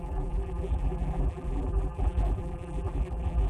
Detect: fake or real fake